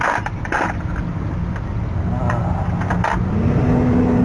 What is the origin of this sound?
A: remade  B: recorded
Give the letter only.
B